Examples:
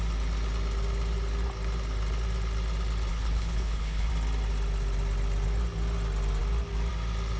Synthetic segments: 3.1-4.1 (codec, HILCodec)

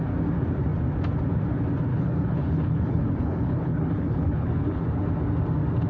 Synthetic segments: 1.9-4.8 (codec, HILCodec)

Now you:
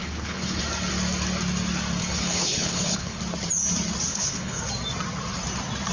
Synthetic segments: 0.0-0.6 (codec, HILCodec); 2.0-3.2; 4.1-4.6

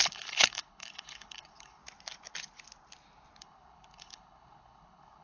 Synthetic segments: 0.0-1.8 (codec, HILCodec); 3.4-5.2

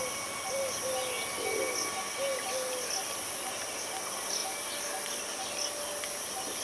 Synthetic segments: none

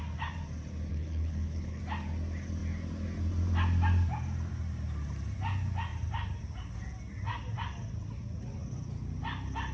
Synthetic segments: 0.9-1.8 (codec, HILCodec)

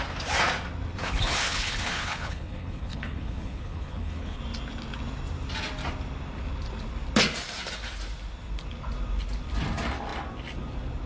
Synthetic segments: 1.0-4.4 (codec, HILCodec)